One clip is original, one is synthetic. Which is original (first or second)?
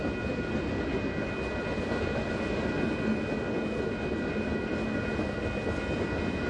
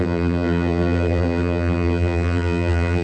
first